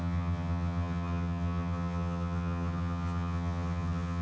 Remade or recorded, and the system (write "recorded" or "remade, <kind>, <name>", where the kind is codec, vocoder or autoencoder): remade, vocoder, HiFi-GAN